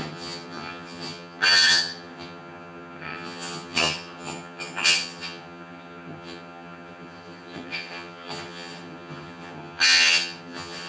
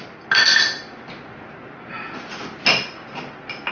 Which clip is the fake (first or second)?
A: first